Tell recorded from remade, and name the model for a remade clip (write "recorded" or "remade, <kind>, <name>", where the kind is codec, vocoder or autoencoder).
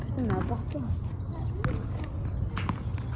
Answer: recorded